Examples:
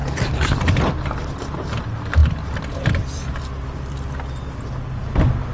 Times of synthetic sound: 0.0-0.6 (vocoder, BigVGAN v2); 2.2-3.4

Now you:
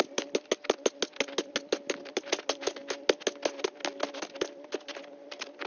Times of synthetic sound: none

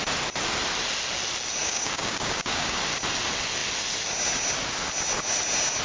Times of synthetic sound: 1.6-2.8 (codec, DAC)

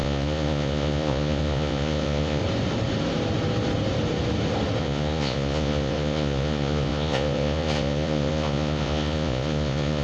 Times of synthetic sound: 0.0-2.4 (vocoder, Vocos); 4.8-10.0

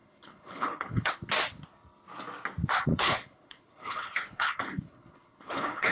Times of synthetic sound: 0.0-1.1 (codec, HILCodec); 2.9-5.9

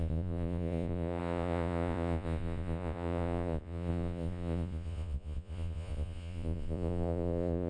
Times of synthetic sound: 0.0-7.7 (vocoder, Vocos)

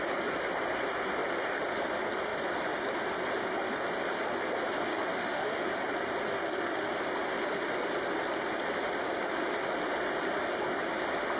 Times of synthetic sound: 4.9-5.7 (autoencoder, DAC-VAE); 6.3-6.9